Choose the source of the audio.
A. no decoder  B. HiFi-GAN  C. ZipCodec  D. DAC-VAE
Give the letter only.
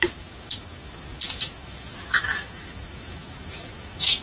D